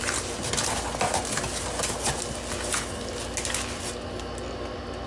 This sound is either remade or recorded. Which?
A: recorded